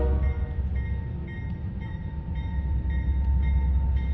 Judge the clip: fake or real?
real